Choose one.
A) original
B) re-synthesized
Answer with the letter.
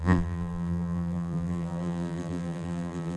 B